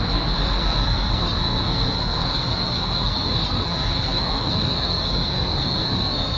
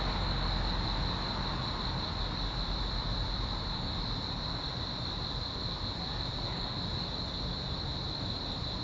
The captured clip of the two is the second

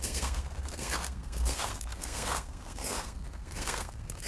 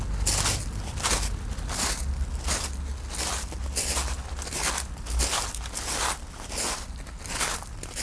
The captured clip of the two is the second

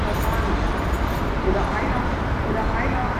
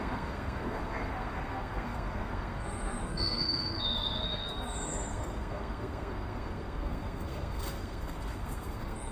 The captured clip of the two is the first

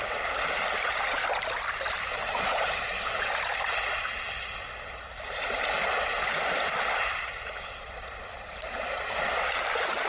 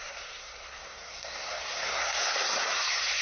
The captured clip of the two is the first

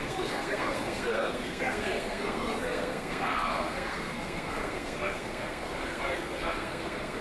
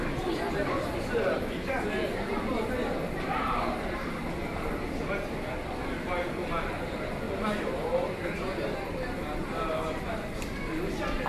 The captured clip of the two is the second